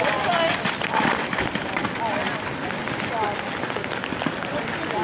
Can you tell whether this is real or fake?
real